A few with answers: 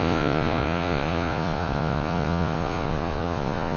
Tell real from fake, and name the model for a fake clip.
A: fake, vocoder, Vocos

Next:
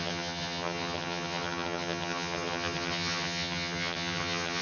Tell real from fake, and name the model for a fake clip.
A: fake, vocoder, HiFi-GAN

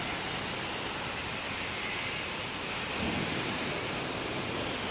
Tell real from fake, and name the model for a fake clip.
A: real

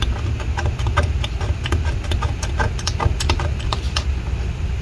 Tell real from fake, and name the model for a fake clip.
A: real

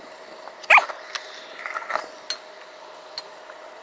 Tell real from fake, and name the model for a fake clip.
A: real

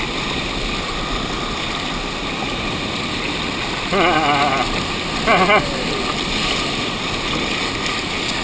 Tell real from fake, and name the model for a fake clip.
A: real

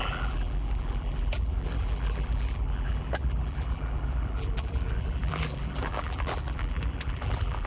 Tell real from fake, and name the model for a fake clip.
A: fake, vocoder, BigVGAN v2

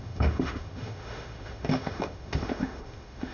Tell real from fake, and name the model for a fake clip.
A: fake, autoencoder, DAC-VAE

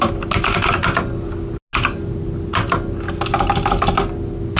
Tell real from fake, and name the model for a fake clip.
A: real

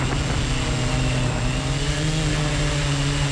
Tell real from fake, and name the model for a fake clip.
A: real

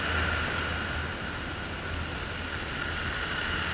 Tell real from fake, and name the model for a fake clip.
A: real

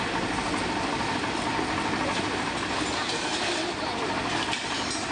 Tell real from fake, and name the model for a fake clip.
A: real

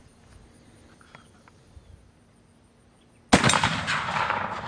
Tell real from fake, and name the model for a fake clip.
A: real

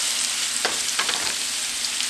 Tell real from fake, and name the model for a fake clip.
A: real